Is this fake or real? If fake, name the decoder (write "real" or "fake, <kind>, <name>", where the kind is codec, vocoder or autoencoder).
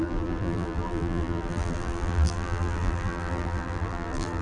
fake, vocoder, BigVGAN v2